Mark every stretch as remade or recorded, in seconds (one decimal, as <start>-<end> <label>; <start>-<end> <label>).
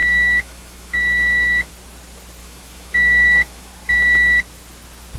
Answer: 0.0-1.7 remade; 1.7-2.4 recorded; 2.4-3.7 remade; 3.7-5.2 recorded